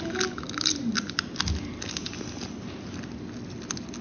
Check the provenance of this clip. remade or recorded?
recorded